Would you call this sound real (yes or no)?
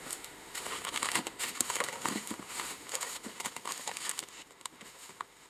no